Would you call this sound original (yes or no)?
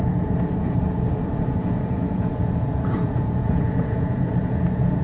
no